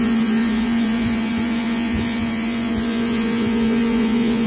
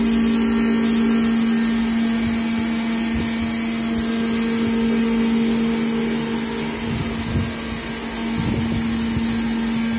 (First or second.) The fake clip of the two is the first